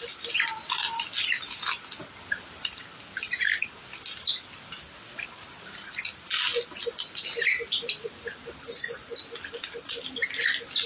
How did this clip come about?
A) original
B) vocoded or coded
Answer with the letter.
A